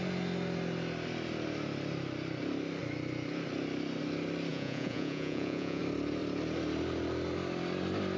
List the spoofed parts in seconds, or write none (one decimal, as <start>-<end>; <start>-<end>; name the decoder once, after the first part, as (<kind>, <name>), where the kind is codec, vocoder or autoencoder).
4.5-5.8 (vocoder, Vocos)